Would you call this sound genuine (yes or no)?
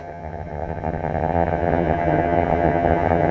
no